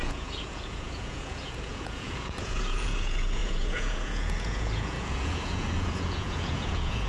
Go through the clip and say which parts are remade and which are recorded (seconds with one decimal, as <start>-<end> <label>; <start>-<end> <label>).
0.0-7.1 remade